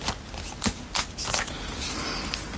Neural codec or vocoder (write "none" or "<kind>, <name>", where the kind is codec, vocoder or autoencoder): none